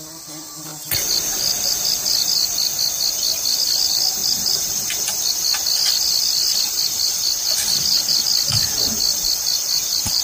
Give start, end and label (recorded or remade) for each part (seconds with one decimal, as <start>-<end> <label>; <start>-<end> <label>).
0.0-0.7 recorded; 0.7-2.7 remade; 2.7-4.2 recorded; 4.2-8.1 remade; 8.1-9.1 recorded; 9.1-10.2 remade